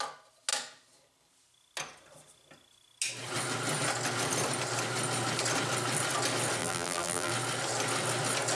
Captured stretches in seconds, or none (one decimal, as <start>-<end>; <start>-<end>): 0.0-6.6; 7.3-8.5

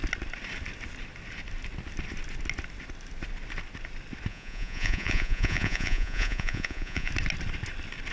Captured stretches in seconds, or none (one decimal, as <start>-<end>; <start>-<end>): 0.0-4.3; 7.1-8.1